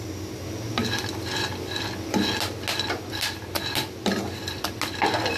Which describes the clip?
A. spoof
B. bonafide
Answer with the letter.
B